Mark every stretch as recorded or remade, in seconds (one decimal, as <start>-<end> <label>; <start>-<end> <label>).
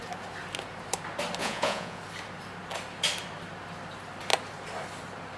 0.0-1.4 recorded; 1.4-2.0 remade; 2.0-5.4 recorded